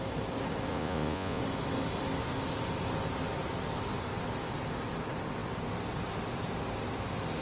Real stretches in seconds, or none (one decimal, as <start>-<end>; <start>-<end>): 0.0-0.7; 1.4-7.4